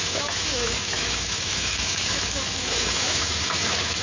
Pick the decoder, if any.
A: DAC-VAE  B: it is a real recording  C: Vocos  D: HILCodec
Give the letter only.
A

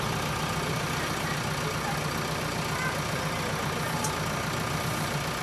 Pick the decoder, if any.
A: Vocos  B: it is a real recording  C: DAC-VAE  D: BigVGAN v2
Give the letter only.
B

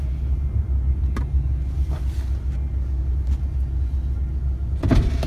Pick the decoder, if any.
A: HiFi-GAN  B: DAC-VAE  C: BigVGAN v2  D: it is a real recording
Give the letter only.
D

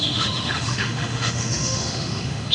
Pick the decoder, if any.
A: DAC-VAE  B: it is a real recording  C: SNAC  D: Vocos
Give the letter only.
A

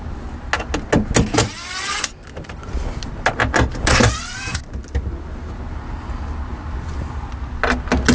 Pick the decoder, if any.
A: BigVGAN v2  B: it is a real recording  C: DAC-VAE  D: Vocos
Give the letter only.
B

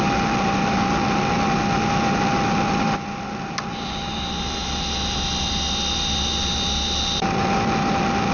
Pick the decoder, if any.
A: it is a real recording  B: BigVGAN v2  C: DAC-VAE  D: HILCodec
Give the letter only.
A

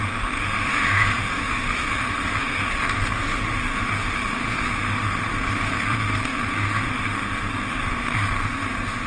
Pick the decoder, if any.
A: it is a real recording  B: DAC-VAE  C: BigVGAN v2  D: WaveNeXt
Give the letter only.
B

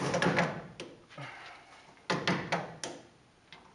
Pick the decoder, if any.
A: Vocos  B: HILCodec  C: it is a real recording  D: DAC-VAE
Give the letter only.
C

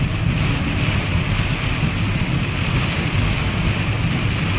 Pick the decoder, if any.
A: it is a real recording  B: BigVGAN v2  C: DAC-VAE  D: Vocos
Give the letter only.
A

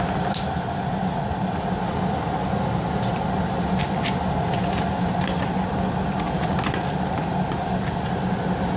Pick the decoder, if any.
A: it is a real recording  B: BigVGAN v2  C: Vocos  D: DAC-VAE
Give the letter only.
A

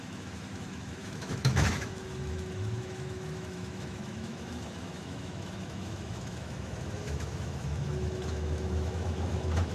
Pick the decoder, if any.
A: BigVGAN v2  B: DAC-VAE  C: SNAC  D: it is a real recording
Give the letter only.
B